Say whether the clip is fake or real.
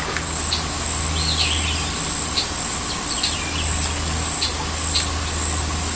real